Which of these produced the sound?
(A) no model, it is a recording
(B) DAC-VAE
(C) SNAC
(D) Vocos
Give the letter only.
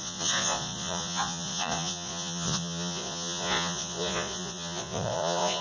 D